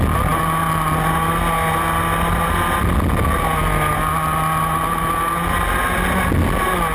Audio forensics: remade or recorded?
recorded